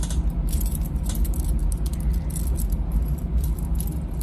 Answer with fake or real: real